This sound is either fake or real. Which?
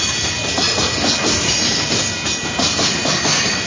real